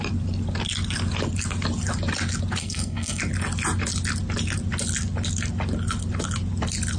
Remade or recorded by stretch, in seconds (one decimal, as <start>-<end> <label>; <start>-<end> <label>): 0.0-2.6 recorded; 2.6-3.2 remade; 3.2-7.0 recorded

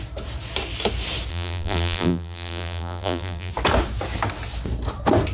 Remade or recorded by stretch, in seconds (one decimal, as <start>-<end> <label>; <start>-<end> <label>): 0.0-1.3 recorded; 1.3-3.5 remade; 3.5-5.3 recorded

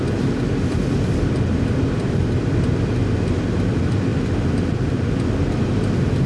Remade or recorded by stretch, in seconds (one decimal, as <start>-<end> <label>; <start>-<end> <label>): 0.0-6.3 recorded